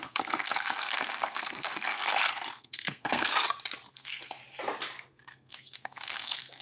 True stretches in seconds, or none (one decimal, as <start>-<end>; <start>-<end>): 3.3-3.9; 4.4-5.1